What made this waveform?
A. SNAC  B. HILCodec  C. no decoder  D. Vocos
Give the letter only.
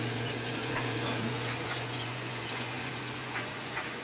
D